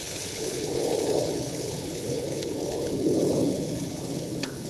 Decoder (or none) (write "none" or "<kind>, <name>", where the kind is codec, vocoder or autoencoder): codec, HILCodec